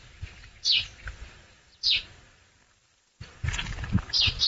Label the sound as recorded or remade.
recorded